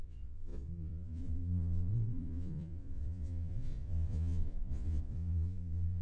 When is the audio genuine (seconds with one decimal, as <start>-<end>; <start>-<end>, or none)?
none